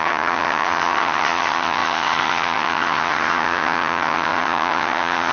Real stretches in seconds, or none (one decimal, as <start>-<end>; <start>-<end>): none